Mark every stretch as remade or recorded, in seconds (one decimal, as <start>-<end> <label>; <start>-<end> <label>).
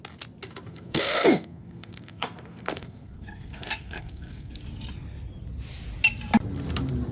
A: 0.0-0.7 recorded; 0.7-4.5 remade; 4.5-7.1 recorded